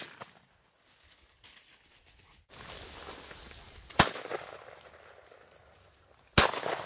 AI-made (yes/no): no